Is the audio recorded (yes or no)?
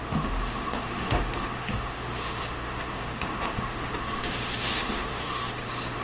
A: no